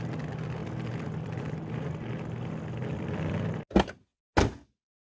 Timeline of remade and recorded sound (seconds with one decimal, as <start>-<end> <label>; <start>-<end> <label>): 0.0-0.6 recorded; 0.6-1.7 remade; 1.7-2.8 recorded; 2.8-3.4 remade; 3.4-5.2 recorded